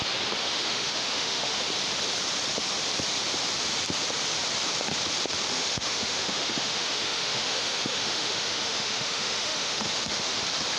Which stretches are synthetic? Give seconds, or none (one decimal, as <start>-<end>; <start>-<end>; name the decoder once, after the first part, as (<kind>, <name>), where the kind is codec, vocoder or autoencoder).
0.4-1.6 (autoencoder, DAC-VAE); 5.5-10.4

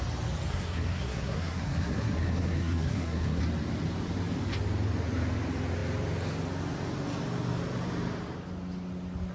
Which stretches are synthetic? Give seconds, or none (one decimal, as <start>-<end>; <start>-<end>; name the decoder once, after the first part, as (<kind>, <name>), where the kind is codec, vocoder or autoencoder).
0.5-3.4 (codec, SNAC)

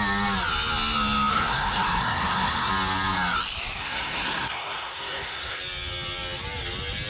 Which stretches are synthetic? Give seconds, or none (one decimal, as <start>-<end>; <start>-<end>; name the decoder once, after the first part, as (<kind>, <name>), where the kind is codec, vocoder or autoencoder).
1.3-2.7 (codec, SNAC); 3.8-5.6

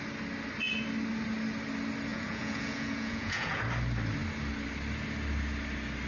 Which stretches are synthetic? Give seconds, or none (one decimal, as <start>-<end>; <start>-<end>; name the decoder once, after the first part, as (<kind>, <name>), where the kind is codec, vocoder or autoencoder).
2.1-3.6 (vocoder, Vocos)

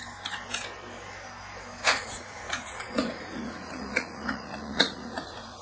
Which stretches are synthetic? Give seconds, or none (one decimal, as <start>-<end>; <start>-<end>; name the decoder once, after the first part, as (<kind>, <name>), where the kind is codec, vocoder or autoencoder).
1.8-5.6 (vocoder, Vocos)

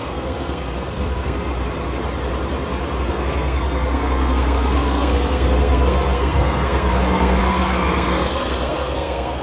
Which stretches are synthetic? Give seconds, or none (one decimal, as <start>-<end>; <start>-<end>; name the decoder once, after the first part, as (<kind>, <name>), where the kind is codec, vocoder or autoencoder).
0.0-1.5 (codec, SNAC); 3.1-9.4